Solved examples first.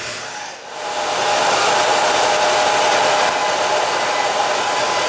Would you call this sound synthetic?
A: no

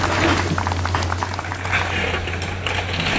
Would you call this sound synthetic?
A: no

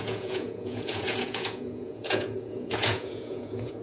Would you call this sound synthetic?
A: yes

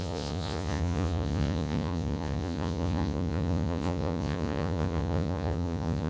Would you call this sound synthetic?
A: yes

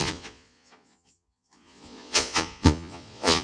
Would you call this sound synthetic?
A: yes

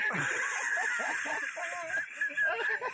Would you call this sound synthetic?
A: no